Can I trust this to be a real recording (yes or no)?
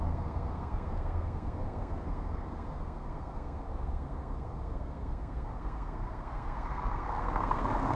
no